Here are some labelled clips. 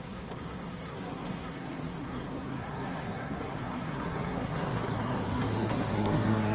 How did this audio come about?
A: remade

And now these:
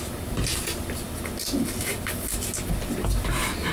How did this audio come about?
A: recorded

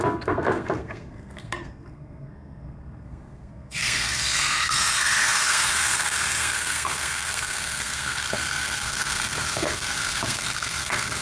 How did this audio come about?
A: remade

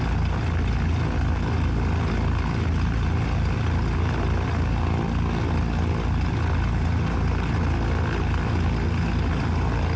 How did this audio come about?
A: recorded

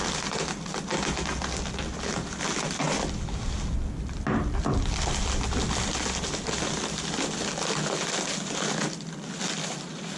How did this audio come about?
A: recorded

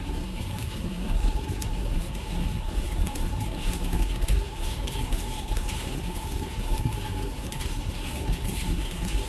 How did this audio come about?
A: remade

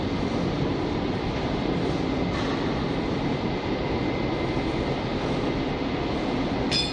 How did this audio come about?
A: recorded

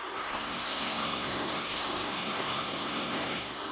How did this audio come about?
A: remade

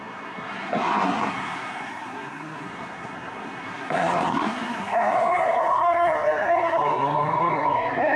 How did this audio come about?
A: remade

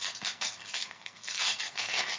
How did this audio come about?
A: remade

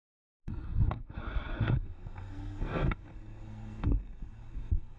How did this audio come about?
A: remade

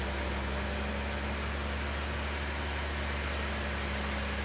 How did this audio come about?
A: recorded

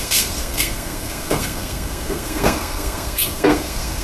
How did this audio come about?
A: remade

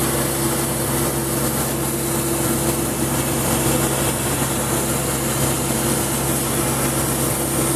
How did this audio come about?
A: recorded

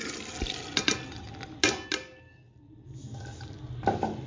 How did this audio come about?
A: recorded